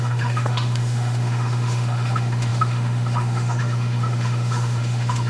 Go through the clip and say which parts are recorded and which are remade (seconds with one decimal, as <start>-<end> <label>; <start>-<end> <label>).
0.0-5.3 remade